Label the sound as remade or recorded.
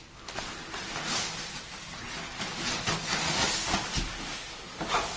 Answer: recorded